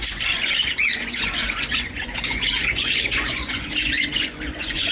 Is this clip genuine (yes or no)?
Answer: no